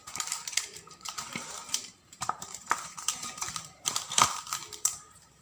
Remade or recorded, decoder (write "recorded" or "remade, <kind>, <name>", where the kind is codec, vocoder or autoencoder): remade, vocoder, BigVGAN v2